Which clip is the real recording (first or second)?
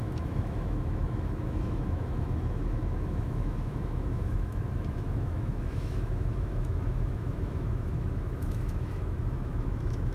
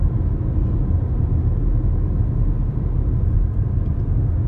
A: second